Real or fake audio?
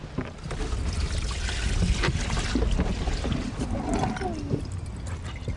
real